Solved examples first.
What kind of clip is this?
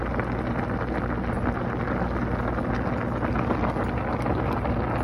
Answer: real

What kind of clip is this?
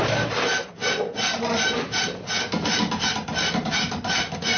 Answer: real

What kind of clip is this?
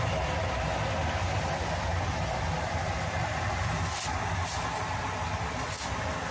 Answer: fake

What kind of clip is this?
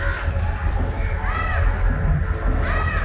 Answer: real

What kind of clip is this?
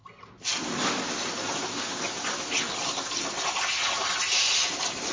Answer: real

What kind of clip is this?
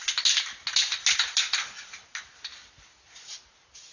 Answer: real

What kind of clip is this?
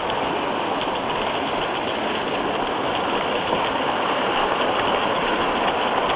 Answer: real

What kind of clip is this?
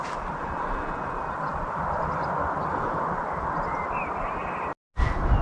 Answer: real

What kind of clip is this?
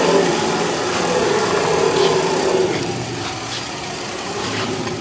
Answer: fake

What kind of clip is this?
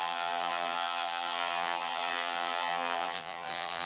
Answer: fake